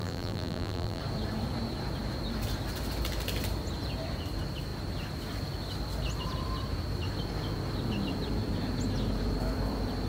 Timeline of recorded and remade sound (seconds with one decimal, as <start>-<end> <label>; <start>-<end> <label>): 0.0-1.0 remade; 1.0-10.1 recorded